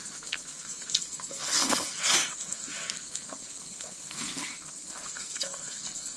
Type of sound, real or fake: fake